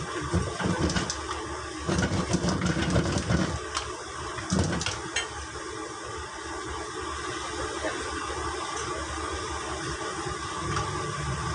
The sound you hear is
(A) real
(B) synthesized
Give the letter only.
A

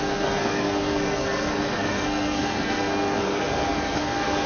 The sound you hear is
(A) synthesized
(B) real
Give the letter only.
A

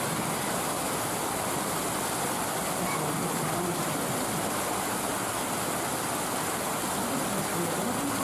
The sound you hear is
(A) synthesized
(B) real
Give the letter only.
B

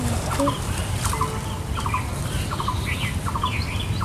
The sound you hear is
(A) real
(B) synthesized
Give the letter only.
A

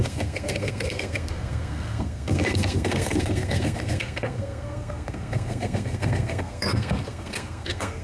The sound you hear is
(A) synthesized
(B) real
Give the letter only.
A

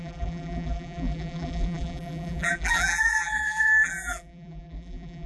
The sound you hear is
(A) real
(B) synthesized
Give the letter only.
B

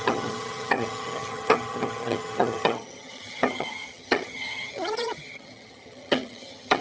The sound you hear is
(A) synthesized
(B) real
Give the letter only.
A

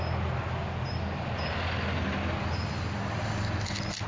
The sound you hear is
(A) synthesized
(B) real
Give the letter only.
B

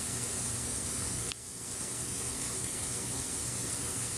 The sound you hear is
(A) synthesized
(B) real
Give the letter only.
A